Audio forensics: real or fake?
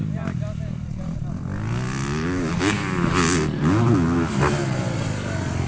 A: real